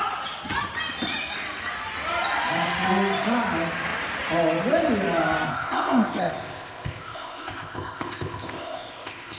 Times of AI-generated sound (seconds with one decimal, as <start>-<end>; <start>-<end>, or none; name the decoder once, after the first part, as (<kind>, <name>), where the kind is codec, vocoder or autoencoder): 5.5-9.4 (codec, ZipCodec)